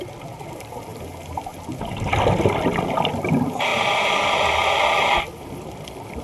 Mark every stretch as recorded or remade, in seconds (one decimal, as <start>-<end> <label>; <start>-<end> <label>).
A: 0.0-6.2 recorded